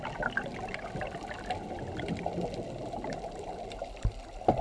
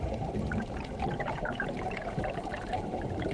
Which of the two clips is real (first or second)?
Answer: first